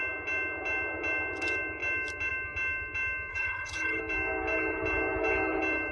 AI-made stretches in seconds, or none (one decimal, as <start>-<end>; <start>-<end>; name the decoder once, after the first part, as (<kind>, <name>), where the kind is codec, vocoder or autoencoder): 3.3-4.0 (codec, HILCodec)